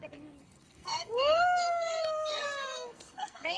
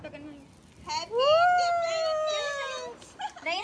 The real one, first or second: second